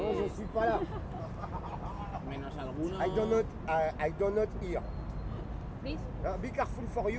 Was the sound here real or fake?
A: real